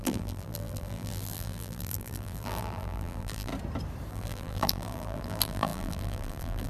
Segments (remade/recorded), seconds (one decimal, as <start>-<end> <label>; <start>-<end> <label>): 0.0-3.5 remade; 3.5-4.1 recorded; 4.1-6.7 remade